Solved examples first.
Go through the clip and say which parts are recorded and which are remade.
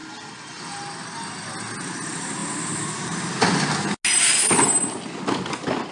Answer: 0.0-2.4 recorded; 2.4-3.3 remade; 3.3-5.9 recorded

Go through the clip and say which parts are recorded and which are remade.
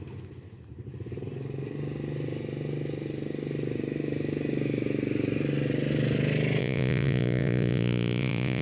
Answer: 0.0-6.6 recorded; 6.6-8.6 remade